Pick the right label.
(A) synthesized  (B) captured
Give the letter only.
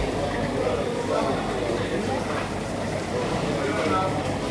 B